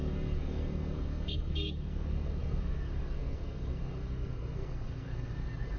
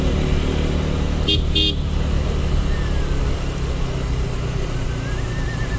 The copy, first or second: first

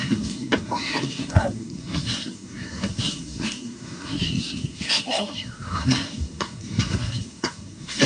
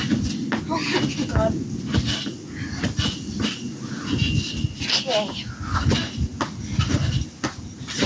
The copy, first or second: first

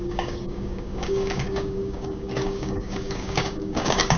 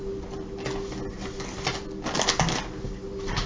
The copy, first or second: first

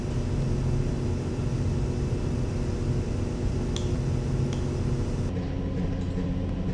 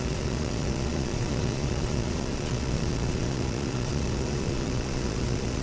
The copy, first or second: second